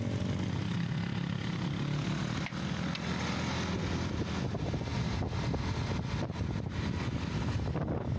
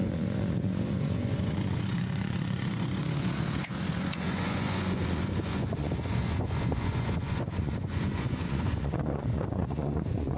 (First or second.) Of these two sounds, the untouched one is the first